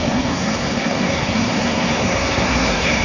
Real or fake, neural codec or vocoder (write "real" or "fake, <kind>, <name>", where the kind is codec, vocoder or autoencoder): fake, codec, SNAC